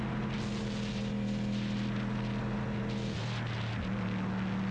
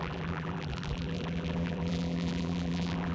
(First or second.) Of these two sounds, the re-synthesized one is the second